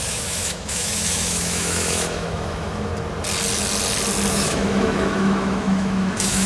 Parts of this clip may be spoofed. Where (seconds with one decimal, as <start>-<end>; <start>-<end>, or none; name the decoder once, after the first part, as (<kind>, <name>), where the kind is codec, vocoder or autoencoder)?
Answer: 0.0-2.9 (autoencoder, DAC-VAE); 4.3-6.5

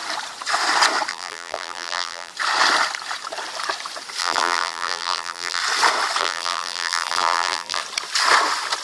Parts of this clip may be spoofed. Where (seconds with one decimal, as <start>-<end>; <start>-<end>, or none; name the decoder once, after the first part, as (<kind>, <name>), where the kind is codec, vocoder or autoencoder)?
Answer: 1.1-2.3 (vocoder, BigVGAN v2); 4.2-5.6; 6.2-7.8

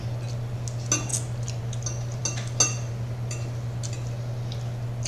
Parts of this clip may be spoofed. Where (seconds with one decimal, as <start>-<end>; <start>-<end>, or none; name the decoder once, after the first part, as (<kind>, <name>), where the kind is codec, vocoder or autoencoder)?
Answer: none

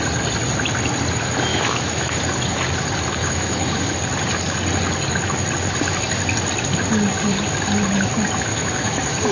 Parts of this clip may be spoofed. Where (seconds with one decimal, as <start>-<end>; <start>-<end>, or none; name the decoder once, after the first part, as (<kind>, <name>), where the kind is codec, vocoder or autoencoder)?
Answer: 1.5-2.1 (autoencoder, DAC-VAE); 3.2-3.9; 8.5-9.3

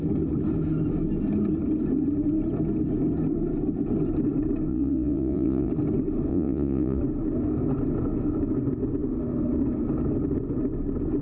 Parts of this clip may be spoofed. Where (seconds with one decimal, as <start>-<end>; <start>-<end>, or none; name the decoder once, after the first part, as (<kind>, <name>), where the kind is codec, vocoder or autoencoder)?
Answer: 4.7-5.7 (vocoder, Vocos); 6.3-7.0